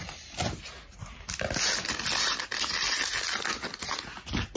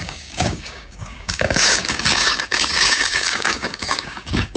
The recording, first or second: first